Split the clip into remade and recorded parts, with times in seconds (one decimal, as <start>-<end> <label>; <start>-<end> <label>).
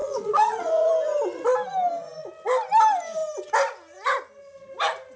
0.0-0.9 remade; 0.9-5.2 recorded